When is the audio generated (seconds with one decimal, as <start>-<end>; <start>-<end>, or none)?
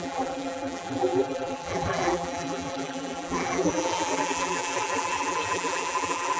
0.0-6.4